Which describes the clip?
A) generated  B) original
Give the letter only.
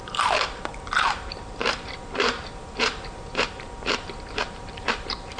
A